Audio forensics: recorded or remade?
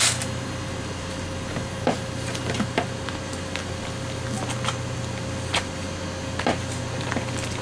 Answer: recorded